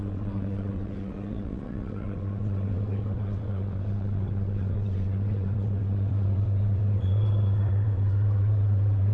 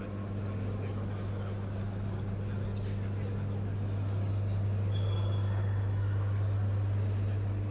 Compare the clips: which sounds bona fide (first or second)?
second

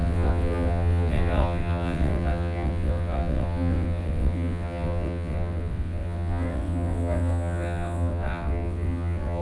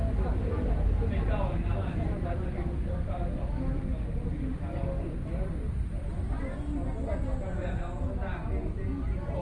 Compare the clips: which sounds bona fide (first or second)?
second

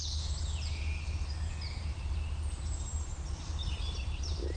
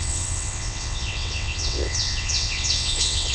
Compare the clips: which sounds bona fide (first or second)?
first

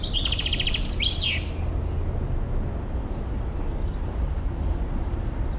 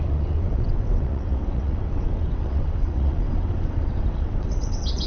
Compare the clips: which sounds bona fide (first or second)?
first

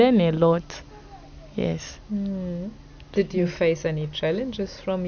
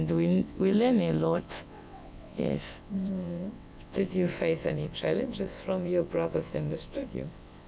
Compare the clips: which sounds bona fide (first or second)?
first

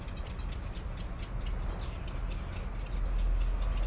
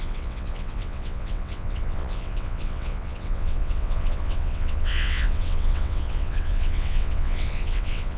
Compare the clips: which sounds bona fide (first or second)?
first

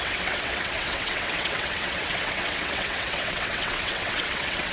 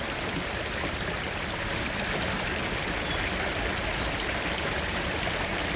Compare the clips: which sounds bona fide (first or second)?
second